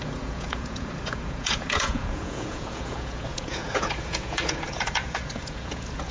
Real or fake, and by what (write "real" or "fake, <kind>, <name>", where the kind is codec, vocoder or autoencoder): fake, vocoder, Vocos